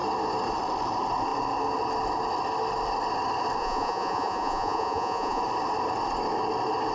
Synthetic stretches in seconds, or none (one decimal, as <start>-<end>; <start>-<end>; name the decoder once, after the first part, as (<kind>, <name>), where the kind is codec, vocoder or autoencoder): 3.6-5.4 (vocoder, Vocos)